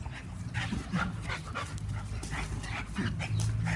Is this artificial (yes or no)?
no